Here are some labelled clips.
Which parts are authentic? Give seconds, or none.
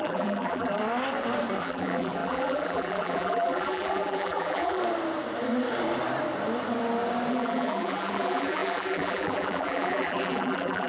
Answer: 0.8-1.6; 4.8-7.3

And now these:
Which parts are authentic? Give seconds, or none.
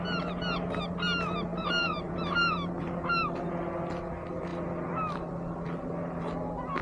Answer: 0.0-1.5; 3.0-6.8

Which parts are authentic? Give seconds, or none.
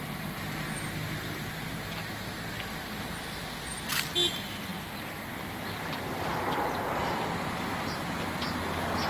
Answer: none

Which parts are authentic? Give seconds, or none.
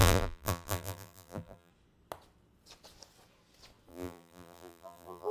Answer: 1.7-3.9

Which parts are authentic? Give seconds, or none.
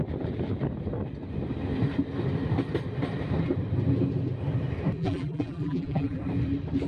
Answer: 0.0-5.0; 6.2-6.9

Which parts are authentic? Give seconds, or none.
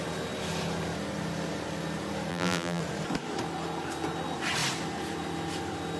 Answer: 0.0-2.3; 2.8-6.0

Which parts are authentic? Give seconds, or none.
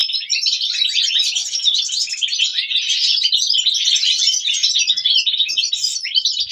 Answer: 0.0-1.1; 2.5-3.4; 4.6-5.7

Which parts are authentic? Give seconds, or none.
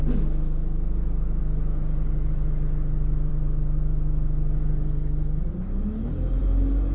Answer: 0.0-6.9